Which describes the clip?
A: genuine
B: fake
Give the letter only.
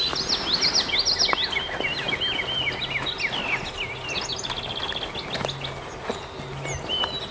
A